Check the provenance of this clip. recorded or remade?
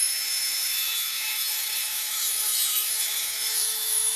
remade